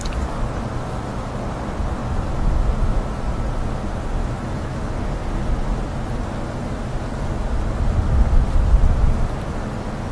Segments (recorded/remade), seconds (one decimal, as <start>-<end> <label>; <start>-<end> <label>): 0.0-4.2 recorded; 4.2-5.0 remade; 5.0-10.1 recorded